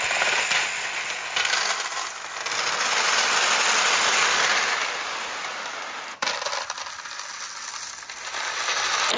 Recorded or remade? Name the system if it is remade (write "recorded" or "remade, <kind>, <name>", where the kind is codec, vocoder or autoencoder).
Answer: recorded